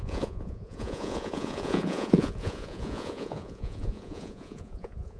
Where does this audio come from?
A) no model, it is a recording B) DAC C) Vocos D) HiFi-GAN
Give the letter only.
C